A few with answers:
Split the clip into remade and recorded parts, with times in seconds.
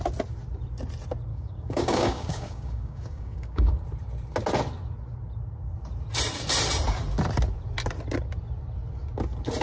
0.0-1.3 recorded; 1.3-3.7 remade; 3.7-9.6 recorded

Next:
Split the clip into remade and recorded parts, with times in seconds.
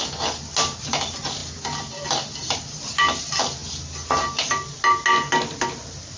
0.0-6.2 recorded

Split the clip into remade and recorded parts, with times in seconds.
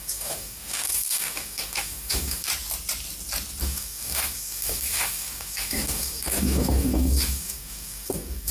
0.0-2.5 remade; 2.5-3.6 recorded; 3.6-8.5 remade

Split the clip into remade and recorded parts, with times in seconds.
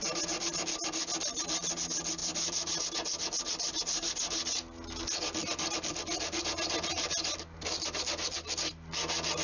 0.0-9.4 recorded